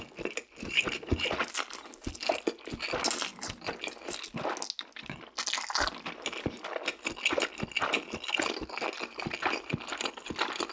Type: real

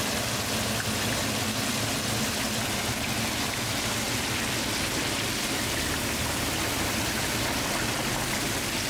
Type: real